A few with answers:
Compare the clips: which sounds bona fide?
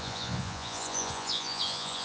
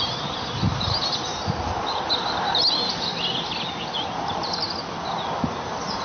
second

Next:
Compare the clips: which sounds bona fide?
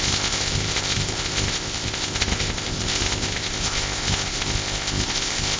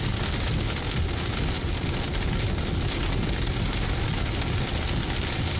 second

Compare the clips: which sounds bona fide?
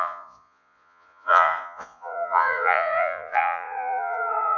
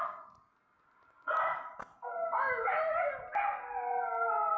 second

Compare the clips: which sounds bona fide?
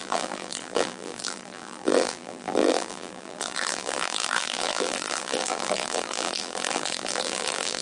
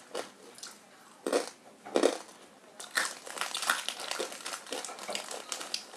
second